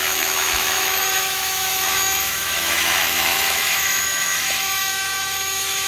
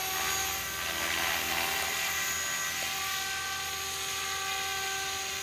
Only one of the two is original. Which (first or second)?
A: second